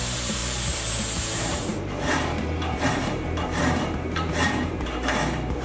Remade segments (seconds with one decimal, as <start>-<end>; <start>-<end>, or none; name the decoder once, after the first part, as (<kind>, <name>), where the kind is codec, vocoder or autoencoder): 0.0-5.6 (vocoder, BigVGAN v2)